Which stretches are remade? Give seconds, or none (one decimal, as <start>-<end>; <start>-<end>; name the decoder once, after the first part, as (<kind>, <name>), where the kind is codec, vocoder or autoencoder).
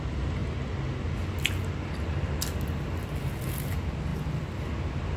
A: none